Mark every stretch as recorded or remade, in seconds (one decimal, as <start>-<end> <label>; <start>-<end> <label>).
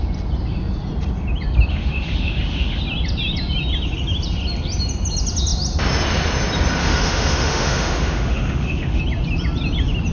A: 0.0-1.7 recorded; 1.7-2.8 remade; 2.8-6.8 recorded; 6.8-9.0 remade; 9.0-10.1 recorded